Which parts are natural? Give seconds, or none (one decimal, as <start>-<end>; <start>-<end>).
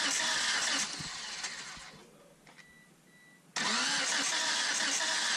0.0-5.4